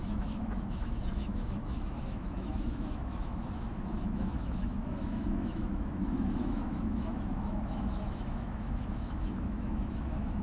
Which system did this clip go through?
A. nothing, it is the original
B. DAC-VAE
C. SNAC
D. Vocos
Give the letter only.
B